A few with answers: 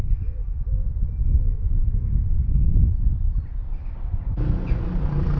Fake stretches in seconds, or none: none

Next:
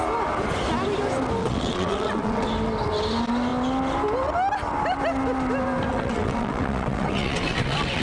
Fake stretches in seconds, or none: 1.4-2.5; 5.9-8.0

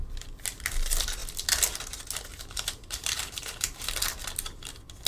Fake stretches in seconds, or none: 2.3-3.9

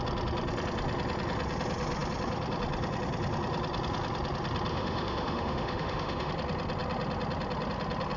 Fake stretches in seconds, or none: 4.7-6.3

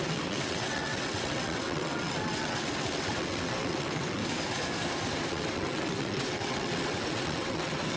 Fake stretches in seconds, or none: 0.0-4.2; 5.3-8.0

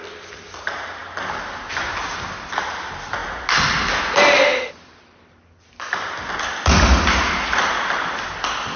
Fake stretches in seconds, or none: none

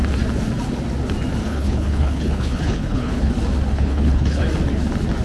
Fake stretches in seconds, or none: 1.4-3.3; 3.7-4.4